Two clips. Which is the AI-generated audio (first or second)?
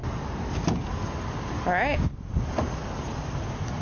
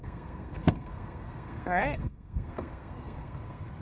second